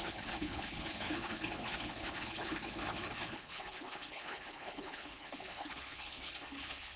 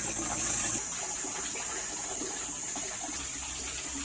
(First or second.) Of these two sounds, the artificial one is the first